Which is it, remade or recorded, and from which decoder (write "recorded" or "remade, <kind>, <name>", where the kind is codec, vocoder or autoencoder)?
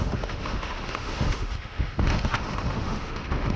remade, autoencoder, DAC-VAE